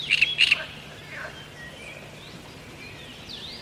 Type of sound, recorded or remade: recorded